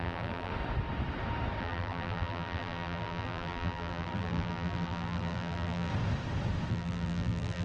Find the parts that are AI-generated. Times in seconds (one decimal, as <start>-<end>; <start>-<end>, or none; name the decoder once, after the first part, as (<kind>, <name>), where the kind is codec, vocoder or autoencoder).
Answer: 0.0-0.5 (vocoder, BigVGAN v2); 1.6-5.9; 6.7-7.6